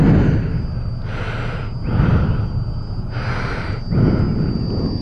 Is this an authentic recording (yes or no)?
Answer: yes